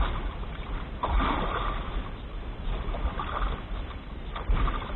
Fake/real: fake